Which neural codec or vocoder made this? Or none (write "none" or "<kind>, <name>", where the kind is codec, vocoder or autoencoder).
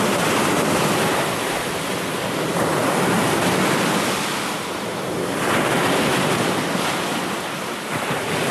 vocoder, BigVGAN v2